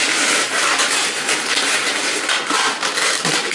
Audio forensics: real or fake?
fake